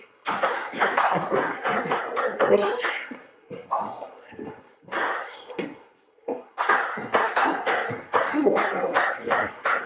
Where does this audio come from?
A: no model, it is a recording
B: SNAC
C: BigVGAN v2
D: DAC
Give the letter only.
B